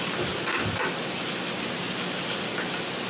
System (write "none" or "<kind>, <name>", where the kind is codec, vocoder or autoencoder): none